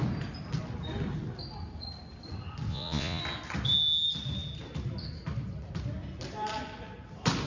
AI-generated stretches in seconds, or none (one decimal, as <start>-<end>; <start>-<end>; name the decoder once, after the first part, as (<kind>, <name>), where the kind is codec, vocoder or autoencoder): 2.7-3.2 (vocoder, Vocos)